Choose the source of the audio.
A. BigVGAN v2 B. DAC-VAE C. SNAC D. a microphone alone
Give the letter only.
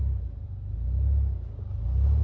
D